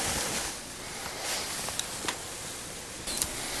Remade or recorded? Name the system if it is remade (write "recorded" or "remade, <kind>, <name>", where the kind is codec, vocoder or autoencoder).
recorded